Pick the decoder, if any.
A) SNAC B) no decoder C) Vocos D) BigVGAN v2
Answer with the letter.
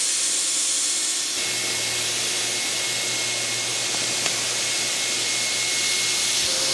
B